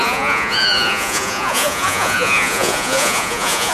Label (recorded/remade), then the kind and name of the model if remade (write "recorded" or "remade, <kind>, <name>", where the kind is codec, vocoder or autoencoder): remade, vocoder, Vocos